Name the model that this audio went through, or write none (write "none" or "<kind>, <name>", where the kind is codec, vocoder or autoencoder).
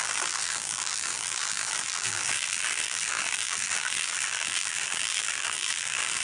vocoder, BigVGAN v2